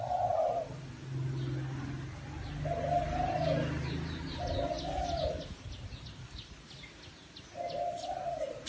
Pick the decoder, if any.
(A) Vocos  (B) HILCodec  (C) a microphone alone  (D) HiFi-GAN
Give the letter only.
C